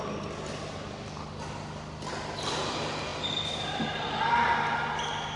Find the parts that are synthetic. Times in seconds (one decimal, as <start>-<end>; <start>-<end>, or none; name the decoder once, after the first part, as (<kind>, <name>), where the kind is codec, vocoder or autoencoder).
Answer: none